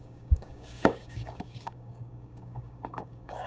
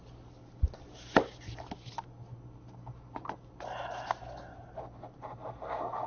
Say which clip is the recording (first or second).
second